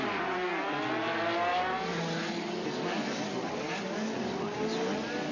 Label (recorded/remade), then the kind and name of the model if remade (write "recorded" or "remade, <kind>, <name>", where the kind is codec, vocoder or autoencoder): recorded